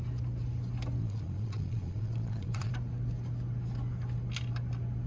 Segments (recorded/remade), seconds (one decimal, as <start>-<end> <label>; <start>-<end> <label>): 0.0-1.0 recorded; 1.0-2.7 remade; 2.7-5.1 recorded